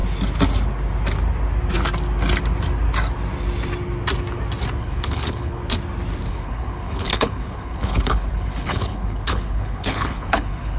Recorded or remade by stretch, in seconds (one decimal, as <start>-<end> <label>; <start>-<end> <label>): 0.0-4.8 recorded; 4.8-5.6 remade; 5.6-6.3 recorded; 6.3-10.8 remade